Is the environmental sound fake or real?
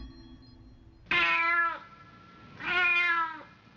real